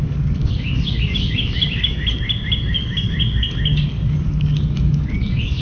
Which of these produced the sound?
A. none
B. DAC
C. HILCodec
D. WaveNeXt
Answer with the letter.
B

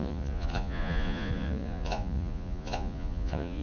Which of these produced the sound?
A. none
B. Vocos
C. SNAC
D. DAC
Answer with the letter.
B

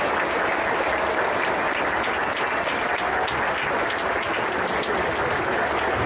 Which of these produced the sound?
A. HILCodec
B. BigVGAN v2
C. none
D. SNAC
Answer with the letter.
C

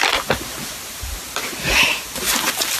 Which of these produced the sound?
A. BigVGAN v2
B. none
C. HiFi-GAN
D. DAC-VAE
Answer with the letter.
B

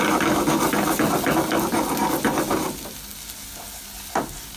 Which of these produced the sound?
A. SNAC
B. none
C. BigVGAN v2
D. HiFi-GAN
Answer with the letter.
B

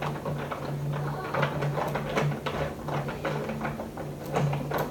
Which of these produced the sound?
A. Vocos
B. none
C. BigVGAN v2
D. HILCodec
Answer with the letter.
B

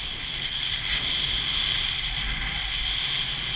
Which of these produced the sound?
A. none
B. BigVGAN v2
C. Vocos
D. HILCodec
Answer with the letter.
B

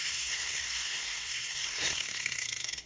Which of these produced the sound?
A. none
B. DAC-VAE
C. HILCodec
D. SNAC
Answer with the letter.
D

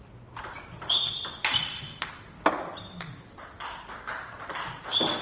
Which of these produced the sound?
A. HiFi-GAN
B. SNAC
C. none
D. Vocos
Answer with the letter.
C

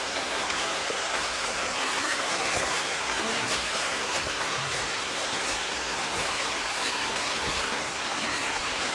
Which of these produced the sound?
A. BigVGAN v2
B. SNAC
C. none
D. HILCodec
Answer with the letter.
B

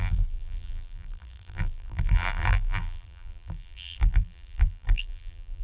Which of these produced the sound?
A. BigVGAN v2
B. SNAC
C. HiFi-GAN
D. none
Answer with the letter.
A